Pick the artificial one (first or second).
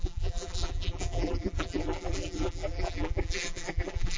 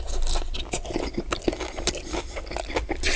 first